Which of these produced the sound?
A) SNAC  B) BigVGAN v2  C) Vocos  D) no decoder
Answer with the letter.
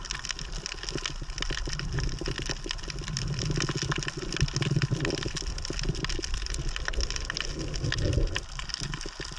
D